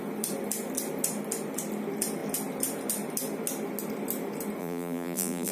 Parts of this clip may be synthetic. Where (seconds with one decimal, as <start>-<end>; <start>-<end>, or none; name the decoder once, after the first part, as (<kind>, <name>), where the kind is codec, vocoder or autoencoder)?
4.6-5.5 (vocoder, BigVGAN v2)